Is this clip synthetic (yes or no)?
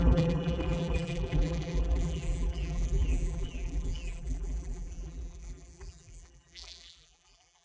yes